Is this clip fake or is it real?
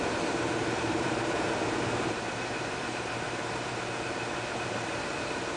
fake